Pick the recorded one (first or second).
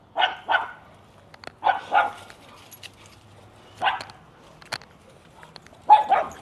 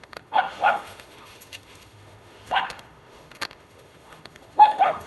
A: first